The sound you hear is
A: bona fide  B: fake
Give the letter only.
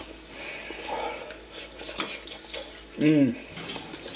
A